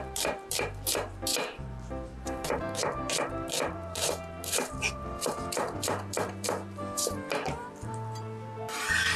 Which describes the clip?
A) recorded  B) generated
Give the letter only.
B